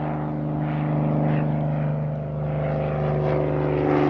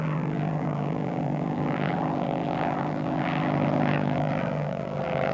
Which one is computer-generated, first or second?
second